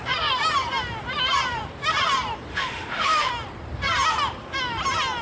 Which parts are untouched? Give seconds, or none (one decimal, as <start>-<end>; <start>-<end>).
0.0-2.5; 3.3-5.2